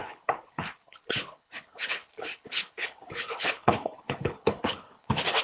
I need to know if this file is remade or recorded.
remade